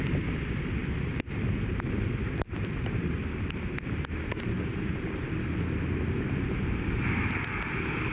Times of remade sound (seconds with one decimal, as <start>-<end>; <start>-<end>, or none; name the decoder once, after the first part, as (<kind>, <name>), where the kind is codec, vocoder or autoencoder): none